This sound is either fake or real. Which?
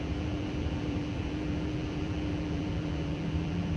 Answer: fake